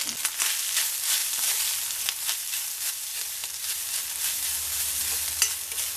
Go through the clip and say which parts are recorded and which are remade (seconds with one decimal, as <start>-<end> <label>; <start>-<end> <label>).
0.0-1.2 recorded; 1.2-2.9 remade; 2.9-3.4 recorded; 3.4-4.0 remade; 4.0-6.0 recorded